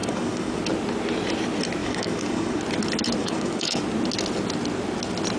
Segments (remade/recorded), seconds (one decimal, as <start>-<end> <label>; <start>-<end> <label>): 0.0-0.6 remade; 0.6-1.8 recorded; 1.8-2.6 remade; 2.6-3.2 recorded; 3.2-3.8 remade; 3.8-5.4 recorded